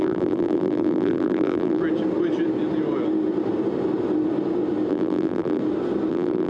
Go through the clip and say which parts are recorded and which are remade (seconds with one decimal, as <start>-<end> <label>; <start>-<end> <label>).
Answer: 0.0-1.8 remade; 1.8-4.9 recorded; 4.9-5.6 remade; 5.6-6.1 recorded; 6.1-6.5 remade